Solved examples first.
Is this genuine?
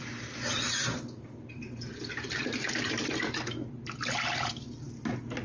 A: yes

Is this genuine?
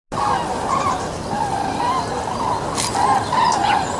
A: yes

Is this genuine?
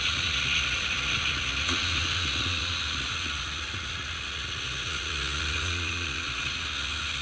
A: no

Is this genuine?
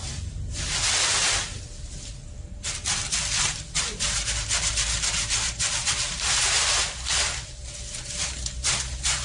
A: yes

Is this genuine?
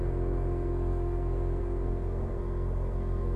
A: no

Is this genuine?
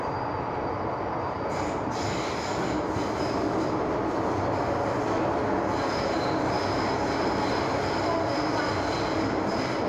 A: yes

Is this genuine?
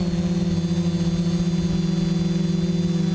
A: yes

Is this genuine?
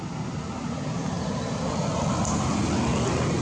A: yes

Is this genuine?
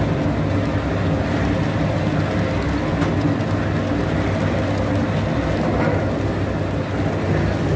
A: yes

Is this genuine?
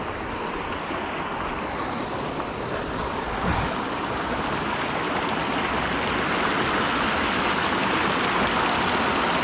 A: yes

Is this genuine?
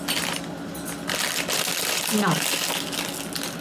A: yes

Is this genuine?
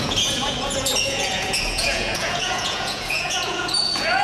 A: no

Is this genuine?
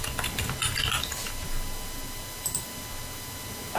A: yes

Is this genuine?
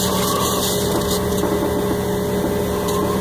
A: yes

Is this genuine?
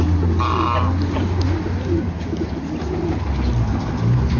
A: yes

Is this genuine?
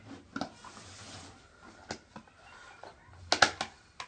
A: yes